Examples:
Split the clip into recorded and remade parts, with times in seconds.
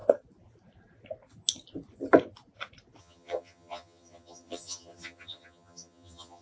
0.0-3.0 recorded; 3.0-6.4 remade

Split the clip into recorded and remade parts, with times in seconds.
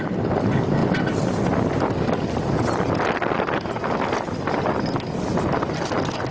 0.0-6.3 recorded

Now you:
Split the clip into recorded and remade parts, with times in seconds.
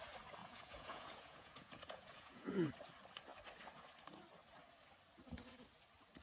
0.0-0.4 recorded; 0.4-2.7 remade; 2.7-6.2 recorded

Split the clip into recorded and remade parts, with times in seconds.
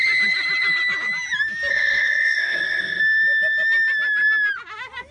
0.0-1.7 recorded; 1.7-3.0 remade; 3.0-5.1 recorded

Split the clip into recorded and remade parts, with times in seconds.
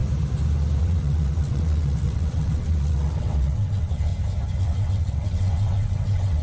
0.0-0.8 recorded; 0.8-4.1 remade; 4.1-4.6 recorded; 4.6-6.4 remade